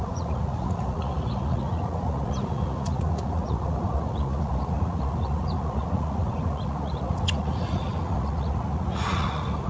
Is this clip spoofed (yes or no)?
yes